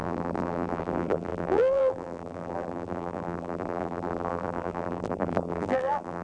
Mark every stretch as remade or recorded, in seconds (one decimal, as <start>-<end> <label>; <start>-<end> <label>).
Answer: 0.0-6.2 remade